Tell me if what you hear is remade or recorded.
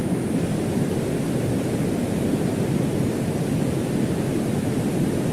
recorded